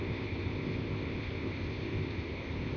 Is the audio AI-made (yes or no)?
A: yes